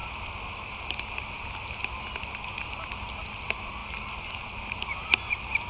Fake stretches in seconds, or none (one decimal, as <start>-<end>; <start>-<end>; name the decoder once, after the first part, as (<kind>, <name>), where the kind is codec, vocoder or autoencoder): none